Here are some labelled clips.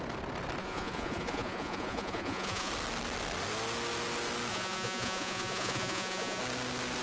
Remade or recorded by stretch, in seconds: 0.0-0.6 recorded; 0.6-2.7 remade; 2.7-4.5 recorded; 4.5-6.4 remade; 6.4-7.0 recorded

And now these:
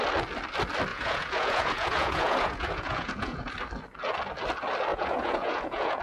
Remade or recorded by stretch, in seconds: 0.0-0.9 recorded; 0.9-3.5 remade; 3.5-4.9 recorded; 4.9-6.0 remade

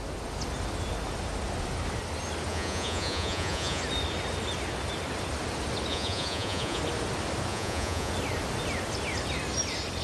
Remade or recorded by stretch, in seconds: 0.0-2.5 recorded; 2.5-3.8 remade; 3.8-5.9 recorded; 5.9-6.8 remade; 6.8-7.5 recorded; 7.5-8.1 remade; 8.1-10.0 recorded

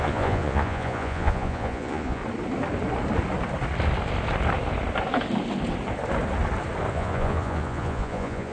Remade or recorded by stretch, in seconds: 0.0-2.2 remade; 2.2-6.9 recorded; 6.9-8.5 remade